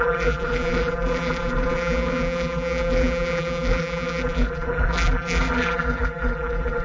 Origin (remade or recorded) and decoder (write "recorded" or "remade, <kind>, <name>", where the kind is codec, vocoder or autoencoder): remade, vocoder, BigVGAN v2